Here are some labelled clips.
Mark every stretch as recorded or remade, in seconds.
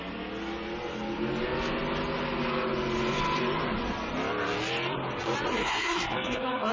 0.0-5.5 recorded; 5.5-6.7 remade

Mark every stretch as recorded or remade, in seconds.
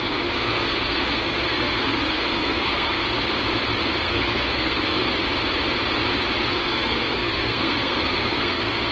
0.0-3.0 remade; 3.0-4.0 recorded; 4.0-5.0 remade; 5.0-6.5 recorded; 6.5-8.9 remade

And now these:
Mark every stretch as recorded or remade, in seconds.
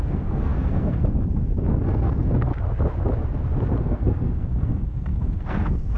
0.0-2.5 remade; 2.5-3.8 recorded; 3.8-6.0 remade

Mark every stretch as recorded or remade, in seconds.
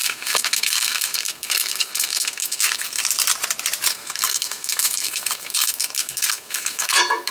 0.0-3.0 remade; 3.0-3.9 recorded; 3.9-7.3 remade